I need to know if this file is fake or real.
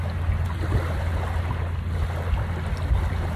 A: real